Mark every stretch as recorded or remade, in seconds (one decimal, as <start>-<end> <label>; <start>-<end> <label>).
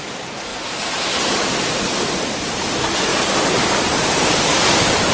0.0-0.5 remade; 0.5-1.7 recorded; 1.7-5.1 remade